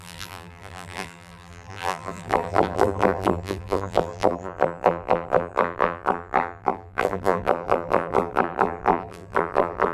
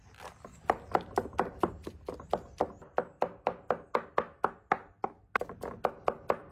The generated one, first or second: first